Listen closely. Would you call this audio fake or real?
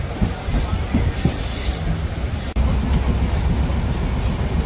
real